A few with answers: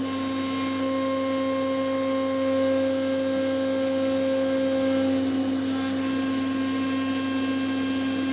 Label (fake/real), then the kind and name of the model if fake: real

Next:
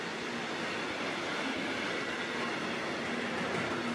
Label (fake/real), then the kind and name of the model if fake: real